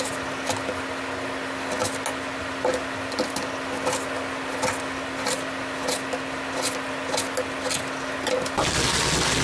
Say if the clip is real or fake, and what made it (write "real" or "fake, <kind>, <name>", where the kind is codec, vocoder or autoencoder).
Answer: real